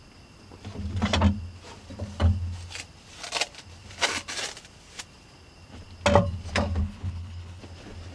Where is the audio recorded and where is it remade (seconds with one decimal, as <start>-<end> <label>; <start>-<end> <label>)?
0.0-6.8 recorded; 6.8-7.6 remade; 7.6-8.1 recorded